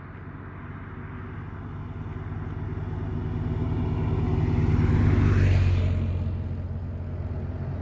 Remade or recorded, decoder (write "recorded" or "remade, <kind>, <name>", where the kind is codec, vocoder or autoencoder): recorded